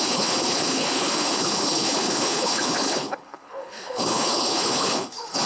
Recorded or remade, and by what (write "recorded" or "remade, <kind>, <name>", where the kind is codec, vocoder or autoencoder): remade, codec, HILCodec